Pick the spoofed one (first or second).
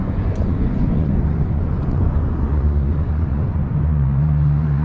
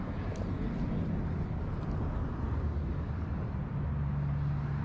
first